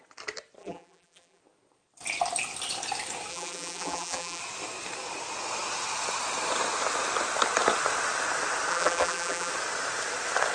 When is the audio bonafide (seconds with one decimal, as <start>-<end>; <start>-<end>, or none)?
0.0-0.6; 1.4-3.3; 4.4-8.7; 9.5-10.5